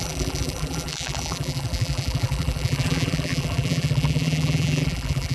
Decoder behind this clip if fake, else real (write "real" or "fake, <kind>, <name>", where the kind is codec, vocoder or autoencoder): fake, vocoder, BigVGAN v2